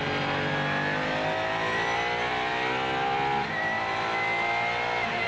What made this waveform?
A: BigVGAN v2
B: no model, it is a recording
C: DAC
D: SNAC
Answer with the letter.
B